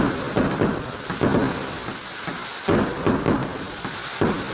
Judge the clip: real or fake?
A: real